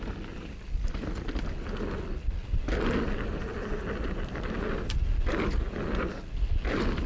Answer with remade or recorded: recorded